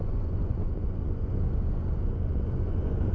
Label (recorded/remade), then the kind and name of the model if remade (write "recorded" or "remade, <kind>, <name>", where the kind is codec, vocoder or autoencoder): remade, vocoder, Vocos